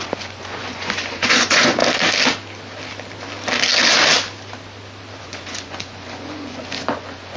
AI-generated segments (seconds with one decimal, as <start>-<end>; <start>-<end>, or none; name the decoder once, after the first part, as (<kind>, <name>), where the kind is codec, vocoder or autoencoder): 0.0-1.8 (vocoder, Vocos); 5.2-7.4